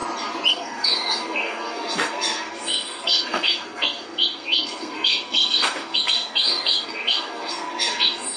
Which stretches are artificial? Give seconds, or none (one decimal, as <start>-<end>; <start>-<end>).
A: 0.5-8.4